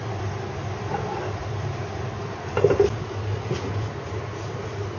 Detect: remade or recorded remade